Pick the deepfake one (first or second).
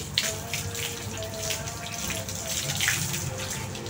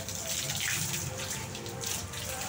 second